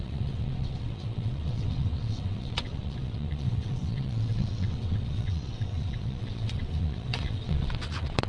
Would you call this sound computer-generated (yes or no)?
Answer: yes